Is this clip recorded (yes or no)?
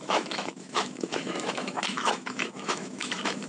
no